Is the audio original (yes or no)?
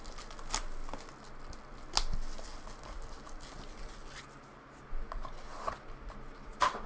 yes